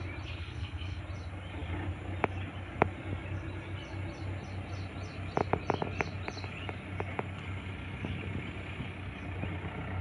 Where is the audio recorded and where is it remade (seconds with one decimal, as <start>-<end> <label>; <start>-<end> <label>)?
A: 0.0-0.4 recorded; 0.4-1.0 remade; 1.0-10.0 recorded